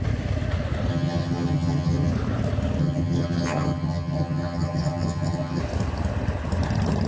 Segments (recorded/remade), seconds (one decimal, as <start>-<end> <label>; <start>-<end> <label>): 0.0-0.9 recorded; 0.9-2.1 remade; 2.1-2.8 recorded; 2.8-5.6 remade; 5.6-7.1 recorded